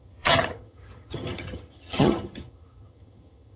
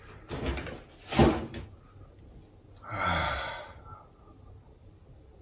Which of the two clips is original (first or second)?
second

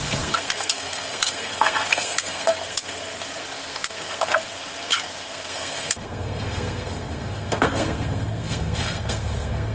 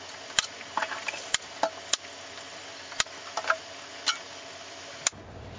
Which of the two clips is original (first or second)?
second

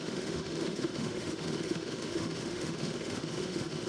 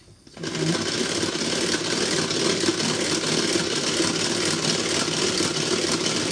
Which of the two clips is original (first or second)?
second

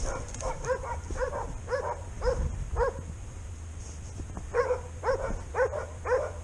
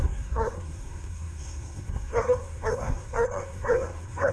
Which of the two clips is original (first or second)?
first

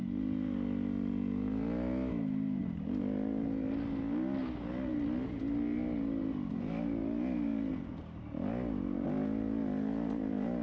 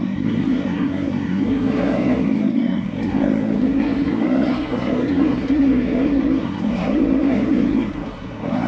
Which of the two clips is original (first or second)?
first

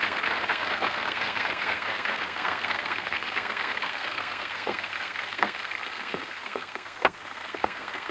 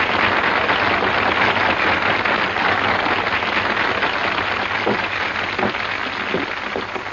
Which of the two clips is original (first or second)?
second